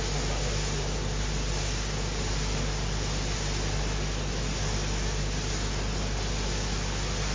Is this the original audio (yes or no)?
yes